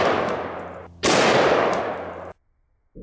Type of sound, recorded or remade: recorded